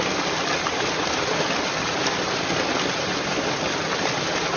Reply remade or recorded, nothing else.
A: recorded